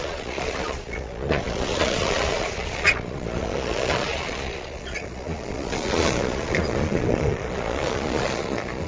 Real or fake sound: fake